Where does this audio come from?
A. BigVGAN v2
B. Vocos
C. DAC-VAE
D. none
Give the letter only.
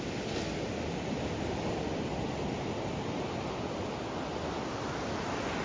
D